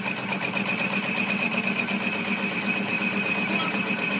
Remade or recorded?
recorded